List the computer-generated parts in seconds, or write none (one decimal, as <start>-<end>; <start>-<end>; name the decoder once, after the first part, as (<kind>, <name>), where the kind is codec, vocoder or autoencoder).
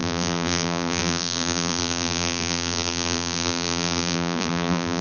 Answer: 0.0-5.0 (vocoder, BigVGAN v2)